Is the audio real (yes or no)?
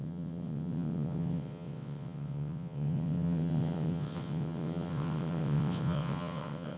no